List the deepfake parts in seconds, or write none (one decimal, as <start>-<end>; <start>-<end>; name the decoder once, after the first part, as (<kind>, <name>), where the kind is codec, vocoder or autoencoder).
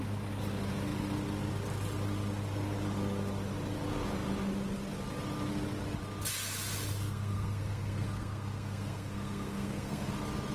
7.0-10.1 (codec, SNAC)